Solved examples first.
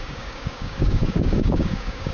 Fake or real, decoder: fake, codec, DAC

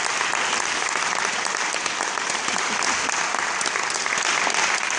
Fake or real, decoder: real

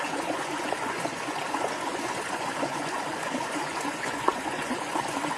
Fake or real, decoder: fake, vocoder, Vocos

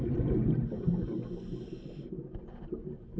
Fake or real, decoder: real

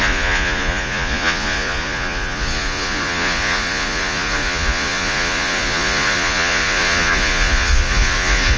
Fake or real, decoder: fake, vocoder, Vocos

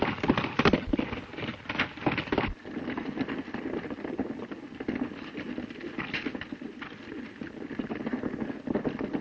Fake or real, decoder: real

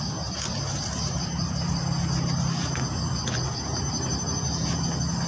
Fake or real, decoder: real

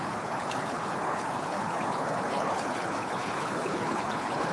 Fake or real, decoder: fake, codec, HILCodec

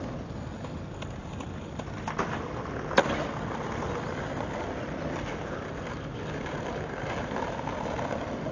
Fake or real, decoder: real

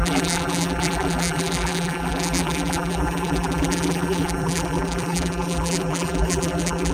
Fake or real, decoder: fake, vocoder, BigVGAN v2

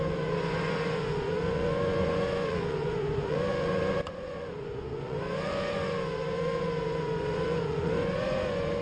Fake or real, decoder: fake, vocoder, Vocos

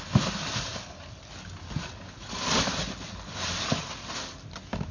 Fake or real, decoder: real